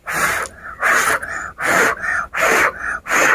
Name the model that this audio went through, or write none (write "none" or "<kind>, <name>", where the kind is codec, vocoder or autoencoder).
none